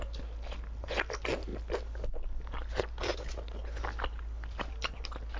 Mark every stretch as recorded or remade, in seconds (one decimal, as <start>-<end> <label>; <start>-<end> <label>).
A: 0.0-5.4 recorded

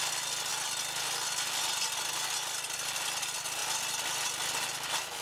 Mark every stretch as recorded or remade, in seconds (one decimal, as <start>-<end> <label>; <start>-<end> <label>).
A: 0.0-3.6 recorded; 3.6-4.2 remade; 4.2-5.2 recorded

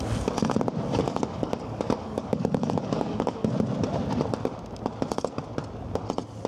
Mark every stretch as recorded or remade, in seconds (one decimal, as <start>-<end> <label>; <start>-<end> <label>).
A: 0.0-1.0 recorded; 1.0-3.5 remade; 3.5-6.5 recorded

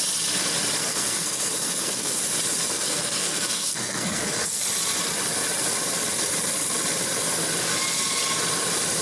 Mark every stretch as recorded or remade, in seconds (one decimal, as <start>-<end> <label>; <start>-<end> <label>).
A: 0.0-0.8 recorded; 0.8-2.2 remade; 2.2-2.6 recorded; 2.6-4.6 remade; 4.6-9.0 recorded